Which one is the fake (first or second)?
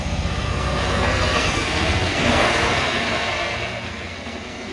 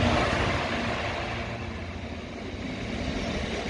first